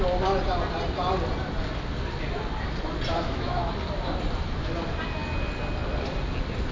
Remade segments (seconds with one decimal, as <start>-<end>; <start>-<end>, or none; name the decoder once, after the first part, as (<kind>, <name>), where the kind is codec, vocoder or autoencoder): 3.1-3.7 (autoencoder, DAC-VAE)